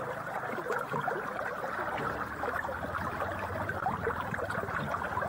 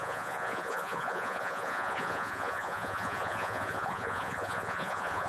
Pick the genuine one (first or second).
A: first